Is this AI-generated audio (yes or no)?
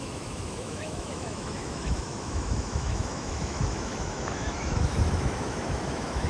yes